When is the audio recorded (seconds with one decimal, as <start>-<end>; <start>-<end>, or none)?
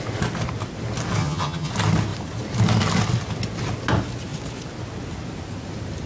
0.0-1.2; 1.7-6.1